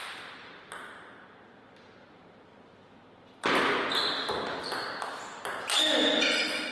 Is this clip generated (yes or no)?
no